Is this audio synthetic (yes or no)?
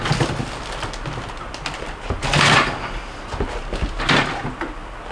no